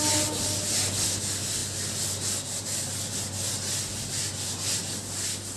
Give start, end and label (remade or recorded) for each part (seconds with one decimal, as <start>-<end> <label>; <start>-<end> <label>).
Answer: 0.0-5.6 recorded